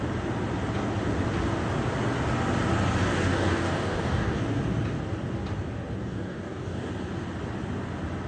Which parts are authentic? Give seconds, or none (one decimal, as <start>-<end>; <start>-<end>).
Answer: 0.0-3.1; 4.4-6.0; 6.9-8.3